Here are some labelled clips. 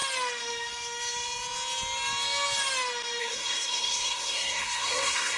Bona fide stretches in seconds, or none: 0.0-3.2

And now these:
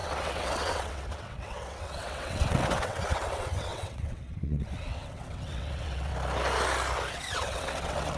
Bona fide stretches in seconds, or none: 6.1-7.1

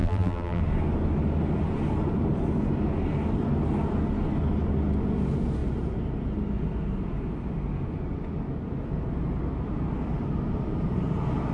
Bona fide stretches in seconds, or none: 0.6-11.5